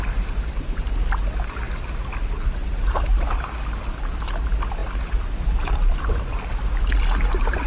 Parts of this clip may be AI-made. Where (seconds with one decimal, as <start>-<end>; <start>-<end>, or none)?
none